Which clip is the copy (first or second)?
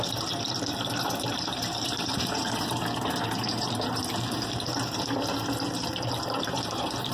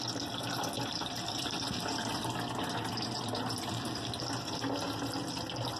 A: first